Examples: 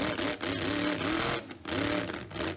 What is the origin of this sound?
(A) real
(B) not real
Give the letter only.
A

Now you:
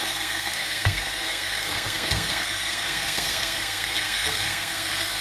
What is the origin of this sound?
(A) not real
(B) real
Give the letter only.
A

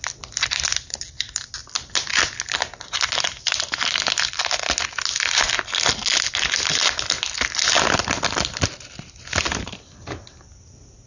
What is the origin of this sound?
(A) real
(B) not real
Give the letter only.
A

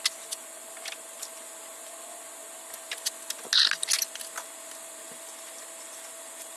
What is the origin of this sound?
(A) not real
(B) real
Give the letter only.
B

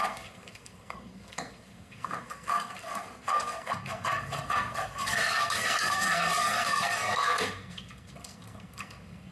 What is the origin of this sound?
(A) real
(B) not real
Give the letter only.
B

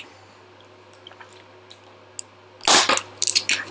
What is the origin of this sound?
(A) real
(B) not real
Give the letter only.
A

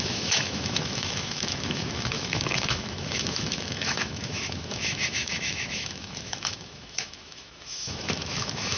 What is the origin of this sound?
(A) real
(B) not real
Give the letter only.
B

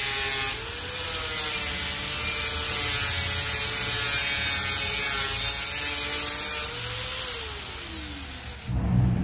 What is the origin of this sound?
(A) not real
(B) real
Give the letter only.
B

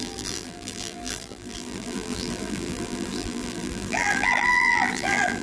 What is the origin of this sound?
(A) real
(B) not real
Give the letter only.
B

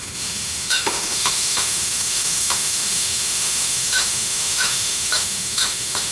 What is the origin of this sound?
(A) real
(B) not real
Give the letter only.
B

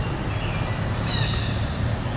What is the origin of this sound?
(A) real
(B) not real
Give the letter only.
A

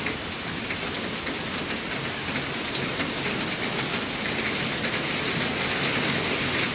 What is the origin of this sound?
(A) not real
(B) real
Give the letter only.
B